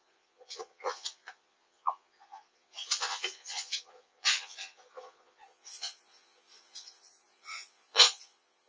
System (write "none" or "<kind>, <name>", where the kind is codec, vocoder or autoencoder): vocoder, Vocos